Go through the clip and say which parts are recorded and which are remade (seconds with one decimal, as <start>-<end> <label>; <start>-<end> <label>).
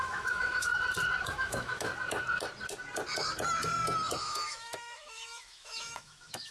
0.0-0.7 remade; 0.7-1.3 recorded; 1.3-1.9 remade; 1.9-4.2 recorded; 4.2-6.5 remade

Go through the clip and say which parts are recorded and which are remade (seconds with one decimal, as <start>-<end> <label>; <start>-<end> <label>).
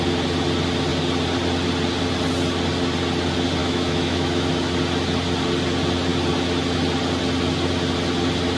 0.0-3.6 recorded; 3.6-4.5 remade; 4.5-8.6 recorded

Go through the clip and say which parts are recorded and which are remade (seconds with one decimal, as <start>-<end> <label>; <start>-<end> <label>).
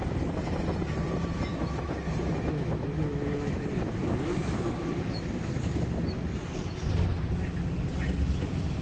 0.0-1.5 recorded; 1.5-5.6 remade; 5.6-8.8 recorded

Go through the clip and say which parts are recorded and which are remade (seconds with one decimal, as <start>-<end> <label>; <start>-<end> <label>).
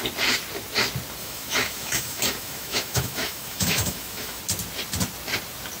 0.0-1.2 recorded; 1.2-4.4 remade; 4.4-5.8 recorded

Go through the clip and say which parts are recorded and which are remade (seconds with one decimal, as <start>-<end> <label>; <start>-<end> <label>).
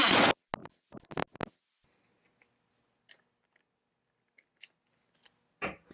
0.0-5.9 recorded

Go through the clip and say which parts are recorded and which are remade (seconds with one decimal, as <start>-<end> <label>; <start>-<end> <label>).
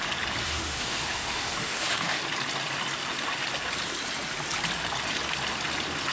0.0-0.4 recorded; 0.4-2.2 remade; 2.2-6.1 recorded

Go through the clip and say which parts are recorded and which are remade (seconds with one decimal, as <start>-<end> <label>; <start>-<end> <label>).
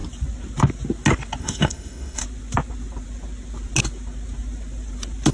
0.0-1.4 recorded; 1.4-2.2 remade; 2.2-5.3 recorded